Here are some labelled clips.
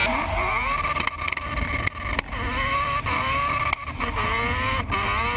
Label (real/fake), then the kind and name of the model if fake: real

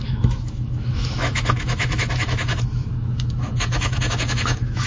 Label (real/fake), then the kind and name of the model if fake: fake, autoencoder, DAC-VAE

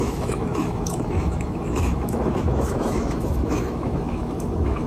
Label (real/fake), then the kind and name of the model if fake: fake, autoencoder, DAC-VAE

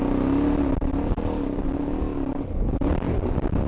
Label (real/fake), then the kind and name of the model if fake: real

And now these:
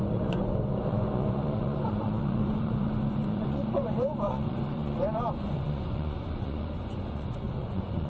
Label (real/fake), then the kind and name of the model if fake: fake, vocoder, Vocos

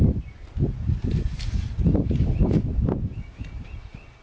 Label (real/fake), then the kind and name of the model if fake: real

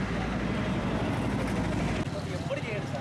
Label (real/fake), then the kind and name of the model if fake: real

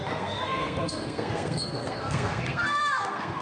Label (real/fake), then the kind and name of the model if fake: fake, codec, SNAC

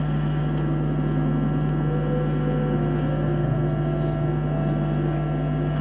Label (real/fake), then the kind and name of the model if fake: real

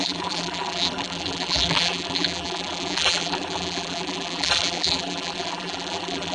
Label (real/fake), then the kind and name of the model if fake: fake, vocoder, BigVGAN v2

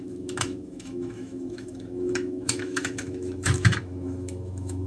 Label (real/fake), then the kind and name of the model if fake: fake, autoencoder, DAC-VAE